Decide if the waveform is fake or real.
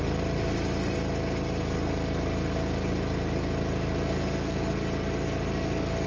real